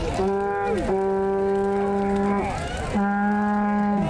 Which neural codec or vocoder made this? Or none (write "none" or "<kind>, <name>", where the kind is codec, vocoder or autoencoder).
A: none